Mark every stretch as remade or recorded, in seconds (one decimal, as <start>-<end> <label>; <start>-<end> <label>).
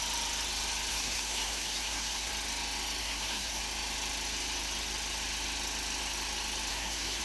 0.0-0.9 recorded; 0.9-2.3 remade; 2.3-3.0 recorded; 3.0-3.6 remade; 3.6-6.7 recorded; 6.7-7.2 remade